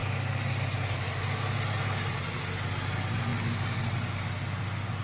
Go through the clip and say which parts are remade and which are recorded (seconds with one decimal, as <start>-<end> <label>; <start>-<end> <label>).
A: 0.0-5.0 recorded